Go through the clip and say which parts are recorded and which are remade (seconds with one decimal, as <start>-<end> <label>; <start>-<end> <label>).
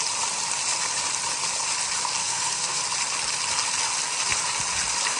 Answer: 0.0-2.2 recorded; 2.2-2.8 remade; 2.8-5.2 recorded